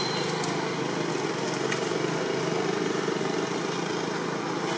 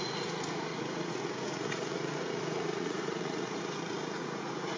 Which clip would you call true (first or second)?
first